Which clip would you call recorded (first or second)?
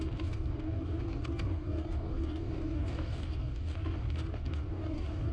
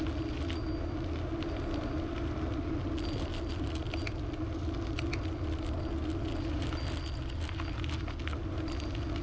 second